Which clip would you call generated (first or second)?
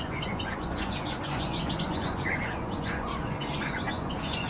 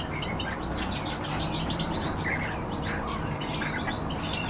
first